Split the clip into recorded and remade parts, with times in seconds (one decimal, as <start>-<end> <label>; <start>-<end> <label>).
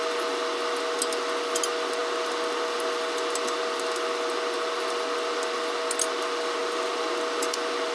0.0-7.9 recorded